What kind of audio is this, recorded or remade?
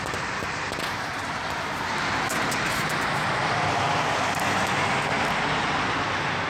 recorded